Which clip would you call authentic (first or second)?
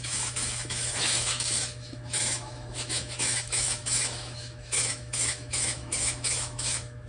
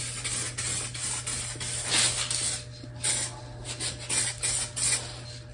second